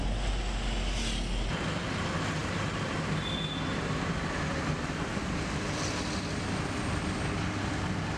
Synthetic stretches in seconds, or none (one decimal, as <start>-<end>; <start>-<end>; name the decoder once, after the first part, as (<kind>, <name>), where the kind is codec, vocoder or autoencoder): none